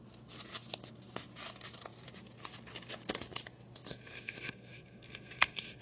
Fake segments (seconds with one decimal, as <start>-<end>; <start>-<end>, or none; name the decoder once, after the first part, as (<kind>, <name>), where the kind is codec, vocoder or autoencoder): 3.9-5.8 (codec, SNAC)